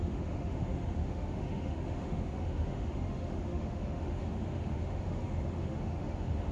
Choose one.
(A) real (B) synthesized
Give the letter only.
B